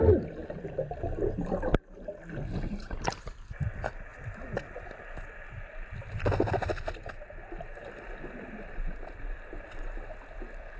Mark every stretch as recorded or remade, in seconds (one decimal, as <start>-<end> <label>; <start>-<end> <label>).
0.0-0.4 recorded; 0.4-1.3 remade; 1.3-4.1 recorded; 4.1-5.0 remade; 5.0-10.8 recorded